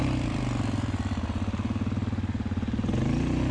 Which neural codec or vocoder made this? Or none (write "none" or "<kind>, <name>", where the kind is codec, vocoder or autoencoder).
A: none